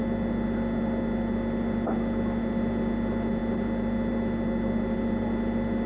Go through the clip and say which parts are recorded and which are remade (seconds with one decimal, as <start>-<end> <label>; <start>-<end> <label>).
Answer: 0.0-5.9 recorded